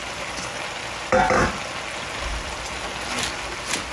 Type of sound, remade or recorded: recorded